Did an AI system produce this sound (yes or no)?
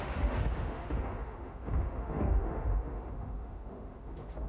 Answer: yes